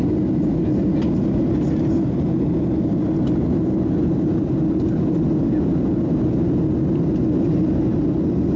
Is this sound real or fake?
real